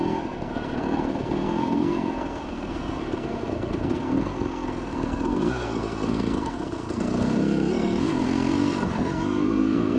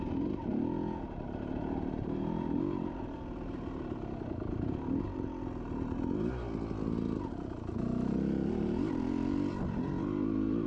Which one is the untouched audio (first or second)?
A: second